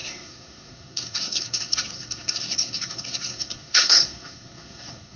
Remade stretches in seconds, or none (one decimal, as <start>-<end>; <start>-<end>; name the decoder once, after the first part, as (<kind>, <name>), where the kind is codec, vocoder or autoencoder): 0.0-5.2 (codec, SNAC)